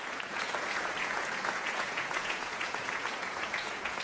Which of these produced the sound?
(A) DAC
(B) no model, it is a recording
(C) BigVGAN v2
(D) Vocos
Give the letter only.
D